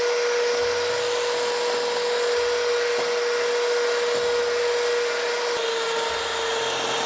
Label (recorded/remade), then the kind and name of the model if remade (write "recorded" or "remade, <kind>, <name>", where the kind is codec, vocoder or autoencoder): recorded